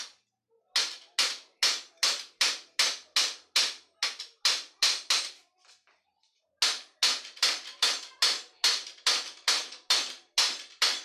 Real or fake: real